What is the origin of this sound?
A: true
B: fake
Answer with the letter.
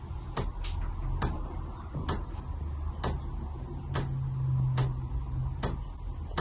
A